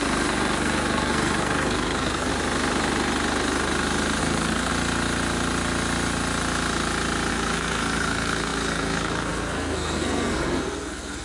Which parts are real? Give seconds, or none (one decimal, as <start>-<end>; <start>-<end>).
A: 2.3-4.2; 4.7-7.3